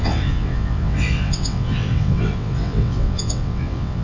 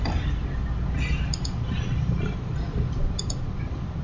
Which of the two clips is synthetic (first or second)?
first